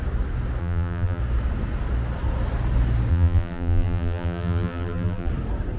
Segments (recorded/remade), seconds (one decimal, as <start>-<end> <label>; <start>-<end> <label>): 0.0-0.6 recorded; 0.6-1.2 remade; 1.2-3.1 recorded; 3.1-5.3 remade; 5.3-5.8 recorded